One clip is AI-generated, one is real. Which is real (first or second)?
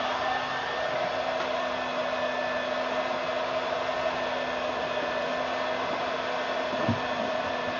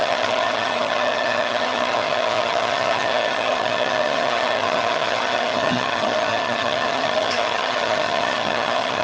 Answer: first